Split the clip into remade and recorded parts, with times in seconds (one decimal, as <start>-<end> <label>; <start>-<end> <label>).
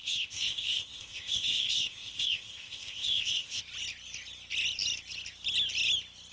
0.0-3.6 remade; 3.6-6.3 recorded